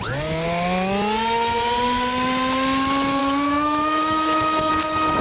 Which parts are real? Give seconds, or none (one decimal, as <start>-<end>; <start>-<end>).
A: 0.0-3.2; 4.7-5.2